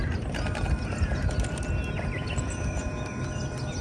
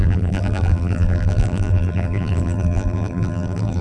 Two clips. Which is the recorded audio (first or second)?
first